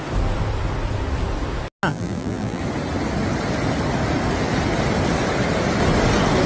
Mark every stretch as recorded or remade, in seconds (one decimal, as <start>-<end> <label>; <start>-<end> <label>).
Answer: 0.0-1.9 recorded; 1.9-2.6 remade; 2.6-6.5 recorded